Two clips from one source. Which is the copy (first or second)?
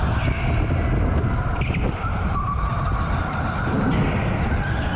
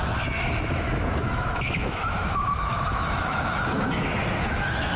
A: second